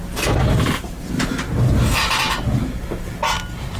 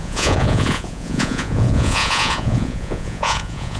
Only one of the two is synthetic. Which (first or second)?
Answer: second